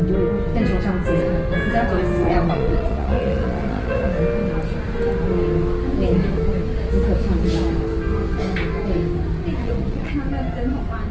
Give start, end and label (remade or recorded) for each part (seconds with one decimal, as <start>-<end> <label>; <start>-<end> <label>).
0.0-2.2 recorded; 2.2-4.1 remade; 4.1-9.6 recorded; 9.6-10.1 remade; 10.1-11.1 recorded